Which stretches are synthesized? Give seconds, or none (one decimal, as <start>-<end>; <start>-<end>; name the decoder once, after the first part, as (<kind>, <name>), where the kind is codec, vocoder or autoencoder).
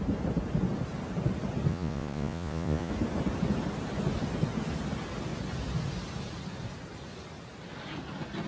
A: 1.7-2.9 (vocoder, Vocos)